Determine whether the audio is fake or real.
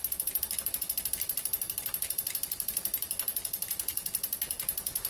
real